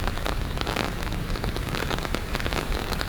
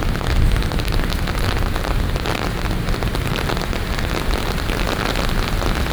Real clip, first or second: second